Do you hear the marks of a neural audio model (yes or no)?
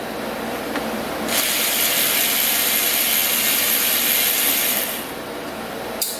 yes